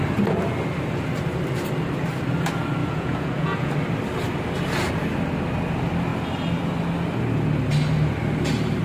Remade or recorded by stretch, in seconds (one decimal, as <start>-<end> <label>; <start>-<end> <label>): 0.0-2.8 recorded; 2.8-3.7 remade; 3.7-8.8 recorded

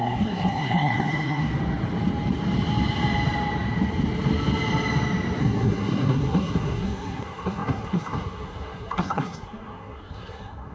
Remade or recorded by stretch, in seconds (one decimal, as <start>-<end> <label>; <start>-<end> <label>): 0.0-1.5 remade; 1.5-5.4 recorded; 5.4-10.7 remade

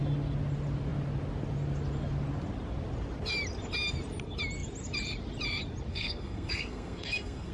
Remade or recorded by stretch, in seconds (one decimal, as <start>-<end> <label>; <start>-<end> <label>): 0.0-5.9 recorded; 5.9-7.5 remade

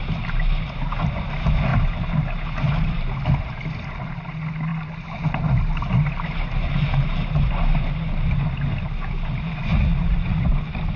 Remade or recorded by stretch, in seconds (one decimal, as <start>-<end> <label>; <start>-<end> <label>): 0.0-9.7 recorded; 9.7-10.5 remade; 10.5-11.0 recorded